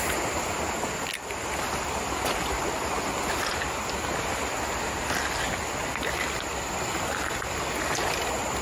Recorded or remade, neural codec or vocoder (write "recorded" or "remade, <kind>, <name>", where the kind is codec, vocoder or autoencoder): recorded